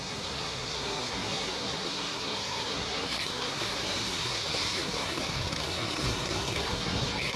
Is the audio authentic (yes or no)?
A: no